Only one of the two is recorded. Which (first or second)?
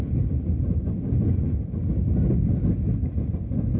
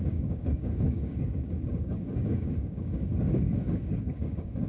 first